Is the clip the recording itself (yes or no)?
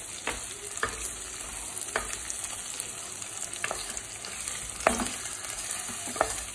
yes